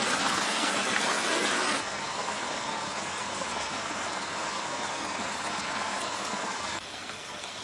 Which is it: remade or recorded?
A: remade